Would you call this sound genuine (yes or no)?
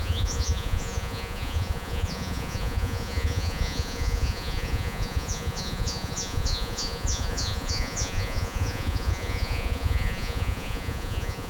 no